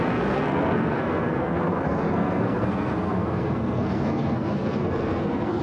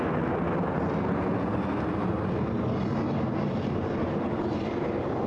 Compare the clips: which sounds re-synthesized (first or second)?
first